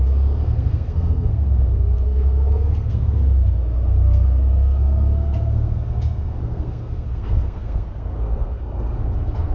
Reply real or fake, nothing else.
fake